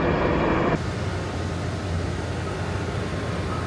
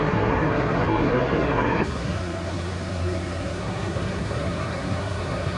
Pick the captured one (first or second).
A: first